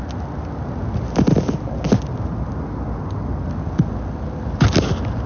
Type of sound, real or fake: real